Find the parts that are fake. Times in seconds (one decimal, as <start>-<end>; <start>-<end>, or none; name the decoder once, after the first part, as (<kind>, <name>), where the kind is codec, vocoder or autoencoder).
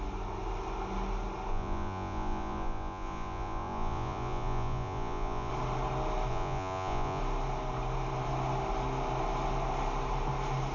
1.5-5.5 (vocoder, Vocos); 6.3-7.2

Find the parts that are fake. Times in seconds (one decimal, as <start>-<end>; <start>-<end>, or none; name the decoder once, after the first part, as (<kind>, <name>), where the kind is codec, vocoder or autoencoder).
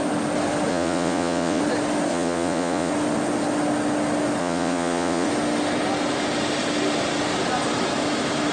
0.7-1.6 (vocoder, Vocos); 2.1-2.9; 4.4-5.3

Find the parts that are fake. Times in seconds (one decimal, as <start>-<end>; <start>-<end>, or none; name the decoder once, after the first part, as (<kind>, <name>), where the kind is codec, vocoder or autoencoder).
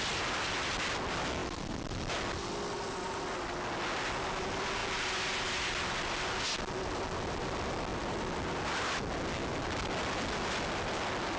none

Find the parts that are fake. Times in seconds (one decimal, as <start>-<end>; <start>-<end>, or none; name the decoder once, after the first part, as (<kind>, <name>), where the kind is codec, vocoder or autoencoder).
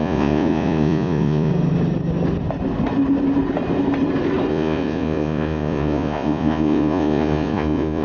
0.0-1.5 (vocoder, Vocos); 4.5-8.0